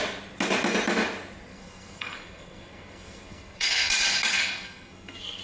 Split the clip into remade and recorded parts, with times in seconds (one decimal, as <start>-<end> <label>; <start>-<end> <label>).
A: 0.0-1.5 recorded; 1.5-3.9 remade; 3.9-4.3 recorded; 4.3-5.4 remade